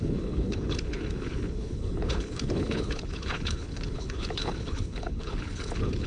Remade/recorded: remade